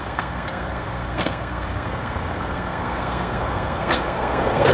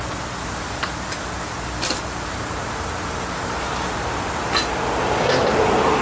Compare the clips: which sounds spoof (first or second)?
first